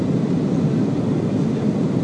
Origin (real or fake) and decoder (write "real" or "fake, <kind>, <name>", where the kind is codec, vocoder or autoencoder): real